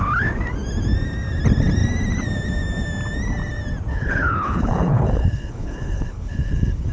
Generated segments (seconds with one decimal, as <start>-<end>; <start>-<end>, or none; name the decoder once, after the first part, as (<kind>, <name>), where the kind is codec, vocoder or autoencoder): 3.9-6.9 (codec, HILCodec)